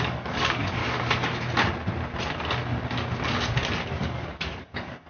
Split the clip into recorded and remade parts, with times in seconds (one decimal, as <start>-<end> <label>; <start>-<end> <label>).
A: 0.0-0.8 remade; 0.8-3.9 recorded; 3.9-5.1 remade